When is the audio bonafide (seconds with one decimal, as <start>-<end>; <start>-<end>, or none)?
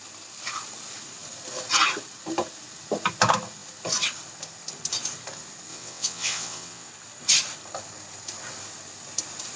0.0-5.7; 6.9-9.6